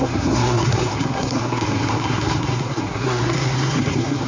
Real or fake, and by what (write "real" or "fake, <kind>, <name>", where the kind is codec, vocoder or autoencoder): fake, codec, SNAC